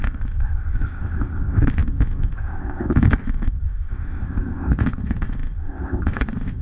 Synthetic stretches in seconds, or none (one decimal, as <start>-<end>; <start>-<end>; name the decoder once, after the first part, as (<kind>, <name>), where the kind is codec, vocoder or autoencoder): 0.0-6.6 (codec, ZipCodec)